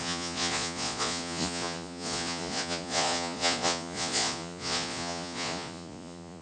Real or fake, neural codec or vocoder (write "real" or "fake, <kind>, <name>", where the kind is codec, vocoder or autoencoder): fake, vocoder, Vocos